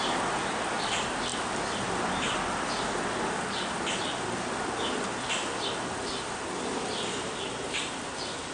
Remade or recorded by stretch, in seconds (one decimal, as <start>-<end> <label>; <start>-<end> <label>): 0.0-8.5 remade